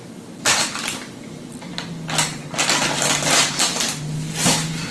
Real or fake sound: real